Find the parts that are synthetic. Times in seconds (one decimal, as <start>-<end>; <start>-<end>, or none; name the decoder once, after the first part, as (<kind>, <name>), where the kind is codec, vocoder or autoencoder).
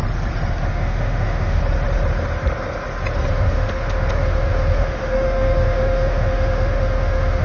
0.7-1.6 (autoencoder, DAC-VAE); 3.3-7.4